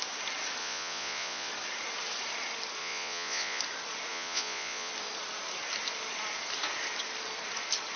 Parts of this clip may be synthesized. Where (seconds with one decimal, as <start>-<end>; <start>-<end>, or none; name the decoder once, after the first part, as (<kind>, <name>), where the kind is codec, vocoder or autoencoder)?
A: 0.6-1.5 (vocoder, Vocos); 2.8-3.6; 4.1-4.9